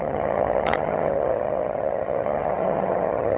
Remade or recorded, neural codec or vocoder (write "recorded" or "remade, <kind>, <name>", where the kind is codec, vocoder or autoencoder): remade, vocoder, HiFi-GAN